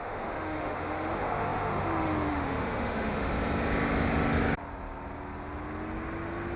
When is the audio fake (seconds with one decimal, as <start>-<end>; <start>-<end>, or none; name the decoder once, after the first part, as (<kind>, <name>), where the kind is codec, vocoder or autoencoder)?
0.0-3.3 (autoencoder, DAC-VAE)